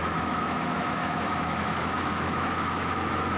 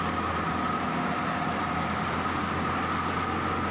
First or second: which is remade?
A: first